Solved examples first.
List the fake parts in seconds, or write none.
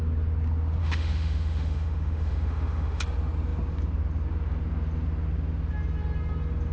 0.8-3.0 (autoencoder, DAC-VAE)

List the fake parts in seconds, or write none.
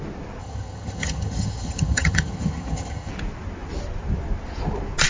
0.4-3.1 (vocoder, HiFi-GAN)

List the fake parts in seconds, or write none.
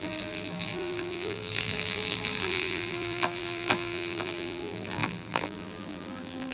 0.0-6.5 (vocoder, BigVGAN v2)